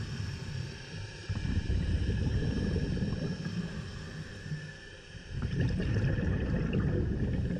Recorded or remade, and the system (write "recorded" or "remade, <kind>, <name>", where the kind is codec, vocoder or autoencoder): remade, vocoder, BigVGAN v2